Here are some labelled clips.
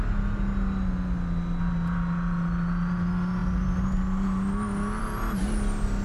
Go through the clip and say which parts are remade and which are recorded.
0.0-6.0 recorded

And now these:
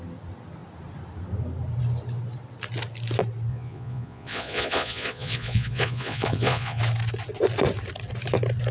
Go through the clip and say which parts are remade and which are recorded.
0.0-3.5 recorded; 3.5-6.8 remade; 6.8-8.7 recorded